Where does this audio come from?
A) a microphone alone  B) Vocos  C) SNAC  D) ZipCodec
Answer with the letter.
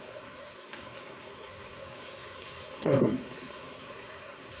C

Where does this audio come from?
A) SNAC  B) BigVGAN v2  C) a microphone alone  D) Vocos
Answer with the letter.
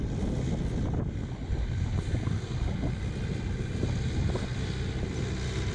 C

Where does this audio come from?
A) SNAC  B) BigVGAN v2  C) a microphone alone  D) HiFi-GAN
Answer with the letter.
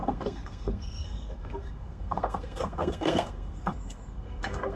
A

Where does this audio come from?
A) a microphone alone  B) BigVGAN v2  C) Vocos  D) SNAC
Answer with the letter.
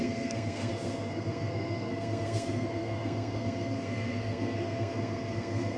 D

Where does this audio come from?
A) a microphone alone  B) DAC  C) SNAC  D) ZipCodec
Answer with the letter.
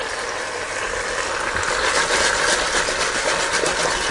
A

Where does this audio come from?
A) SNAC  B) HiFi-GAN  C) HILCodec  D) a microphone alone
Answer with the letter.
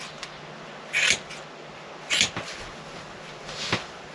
D